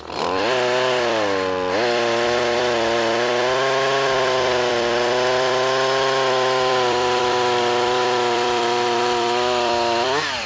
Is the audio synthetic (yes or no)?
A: yes